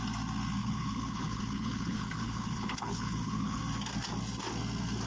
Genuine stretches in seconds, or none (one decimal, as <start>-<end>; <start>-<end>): 0.0-0.6; 3.6-5.1